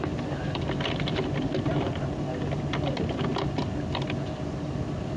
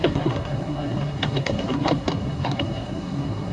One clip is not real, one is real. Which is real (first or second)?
first